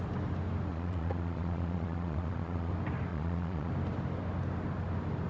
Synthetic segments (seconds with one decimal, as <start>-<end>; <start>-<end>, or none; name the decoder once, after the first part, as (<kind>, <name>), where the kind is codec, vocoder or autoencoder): 0.7-2.7 (vocoder, Vocos); 3.1-3.7